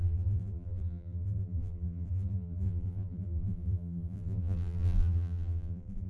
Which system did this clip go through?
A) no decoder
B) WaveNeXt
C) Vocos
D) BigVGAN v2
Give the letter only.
D